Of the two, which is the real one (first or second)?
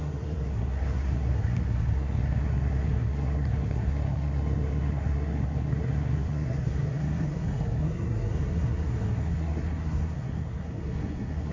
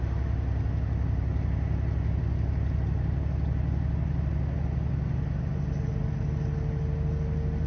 second